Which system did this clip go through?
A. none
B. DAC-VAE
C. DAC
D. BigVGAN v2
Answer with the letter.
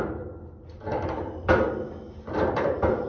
A